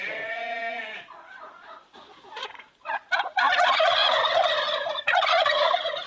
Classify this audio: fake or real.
fake